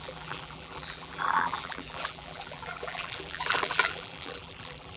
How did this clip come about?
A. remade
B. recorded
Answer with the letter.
A